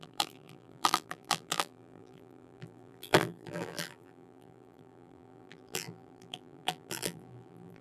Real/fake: fake